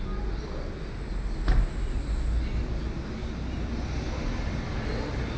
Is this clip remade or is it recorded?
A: recorded